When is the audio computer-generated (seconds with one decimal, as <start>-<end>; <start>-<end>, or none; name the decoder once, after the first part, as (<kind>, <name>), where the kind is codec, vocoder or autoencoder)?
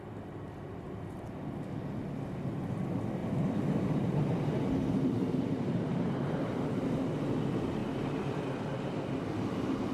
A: 3.2-6.5 (vocoder, BigVGAN v2)